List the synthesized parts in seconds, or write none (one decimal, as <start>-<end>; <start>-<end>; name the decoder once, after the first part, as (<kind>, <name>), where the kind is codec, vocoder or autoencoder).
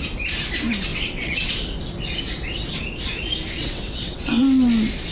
0.9-1.5 (vocoder, WaveNeXt); 3.6-4.4